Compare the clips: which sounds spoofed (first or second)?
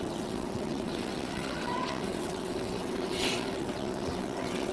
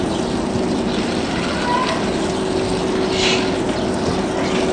first